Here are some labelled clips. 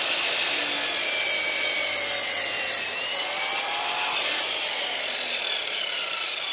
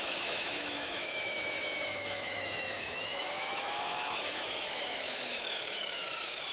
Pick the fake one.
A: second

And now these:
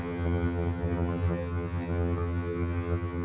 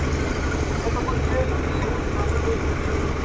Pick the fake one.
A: first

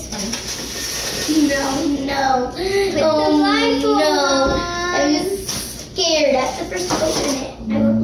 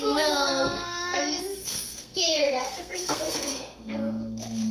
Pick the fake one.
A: second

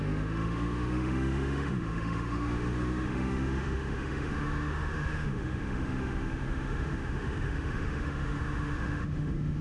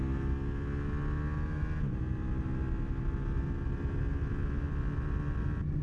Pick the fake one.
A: first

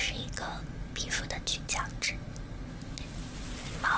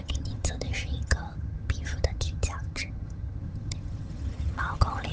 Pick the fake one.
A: second